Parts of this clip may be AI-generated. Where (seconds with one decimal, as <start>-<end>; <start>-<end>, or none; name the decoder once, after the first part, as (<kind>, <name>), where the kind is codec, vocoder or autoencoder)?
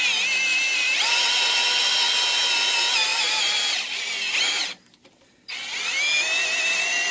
0.5-1.9 (vocoder, BigVGAN v2); 3.1-4.0; 4.6-5.4